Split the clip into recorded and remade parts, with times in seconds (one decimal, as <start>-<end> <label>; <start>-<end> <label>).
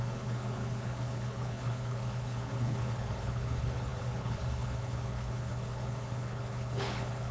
0.0-7.3 remade